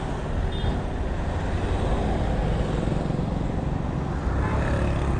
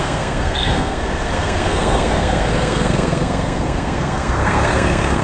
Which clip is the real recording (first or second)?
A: first